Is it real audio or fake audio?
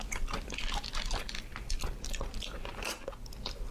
real